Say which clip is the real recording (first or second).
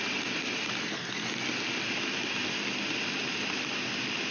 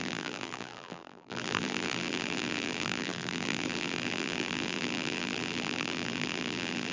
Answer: first